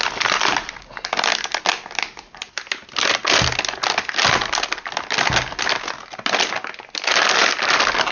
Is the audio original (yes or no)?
yes